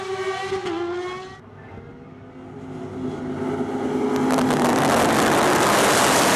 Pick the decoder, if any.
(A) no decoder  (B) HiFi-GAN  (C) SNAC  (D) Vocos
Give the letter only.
A